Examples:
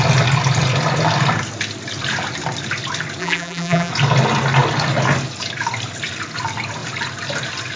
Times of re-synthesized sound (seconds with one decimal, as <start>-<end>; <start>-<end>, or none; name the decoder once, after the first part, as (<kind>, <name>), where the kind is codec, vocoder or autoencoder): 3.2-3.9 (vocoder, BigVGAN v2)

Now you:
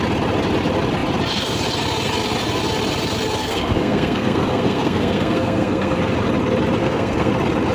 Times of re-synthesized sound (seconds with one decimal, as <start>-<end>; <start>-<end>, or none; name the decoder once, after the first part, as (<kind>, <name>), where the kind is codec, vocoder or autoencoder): 3.4-6.0 (codec, SNAC); 6.8-7.3

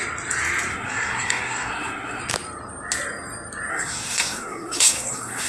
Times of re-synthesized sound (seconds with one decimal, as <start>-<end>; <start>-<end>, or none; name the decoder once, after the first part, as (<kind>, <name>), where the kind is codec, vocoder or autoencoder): 0.7-2.2 (codec, SNAC); 3.7-5.5

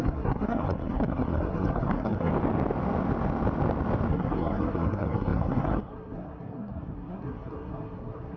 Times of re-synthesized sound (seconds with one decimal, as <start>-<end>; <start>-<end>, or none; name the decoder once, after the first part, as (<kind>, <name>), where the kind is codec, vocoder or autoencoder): 0.0-2.3 (codec, SNAC); 4.1-8.4

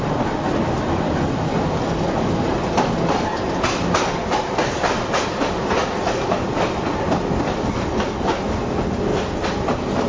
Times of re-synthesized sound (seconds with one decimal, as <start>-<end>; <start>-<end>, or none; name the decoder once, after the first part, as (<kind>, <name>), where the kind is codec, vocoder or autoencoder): none